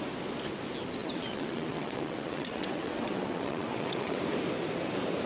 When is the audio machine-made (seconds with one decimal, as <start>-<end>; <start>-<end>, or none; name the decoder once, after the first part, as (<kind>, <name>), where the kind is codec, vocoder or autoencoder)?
1.0-4.2 (vocoder, WaveNeXt)